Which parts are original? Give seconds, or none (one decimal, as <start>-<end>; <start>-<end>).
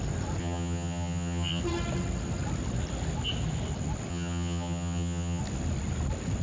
0.0-0.4; 1.6-4.1; 5.4-6.4